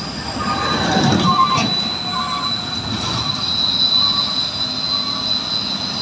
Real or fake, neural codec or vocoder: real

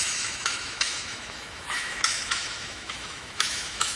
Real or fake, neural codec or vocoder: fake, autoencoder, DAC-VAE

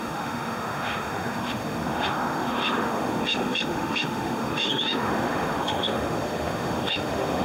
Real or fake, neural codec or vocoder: fake, autoencoder, DAC-VAE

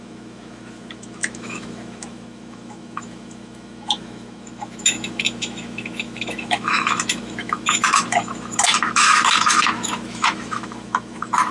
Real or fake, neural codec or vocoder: fake, autoencoder, DAC-VAE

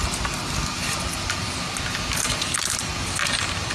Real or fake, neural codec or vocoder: real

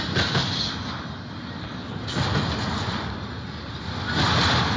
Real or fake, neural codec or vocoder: real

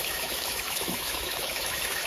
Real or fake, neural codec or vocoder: fake, autoencoder, DAC-VAE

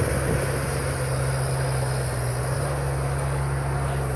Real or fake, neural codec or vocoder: real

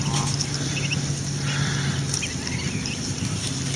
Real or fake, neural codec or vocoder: real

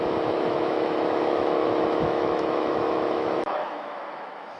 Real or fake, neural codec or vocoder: fake, autoencoder, DAC-VAE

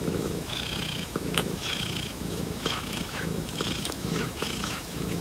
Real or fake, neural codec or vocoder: fake, autoencoder, DAC-VAE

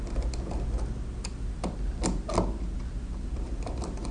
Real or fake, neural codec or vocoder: real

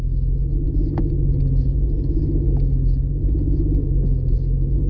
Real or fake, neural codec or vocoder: real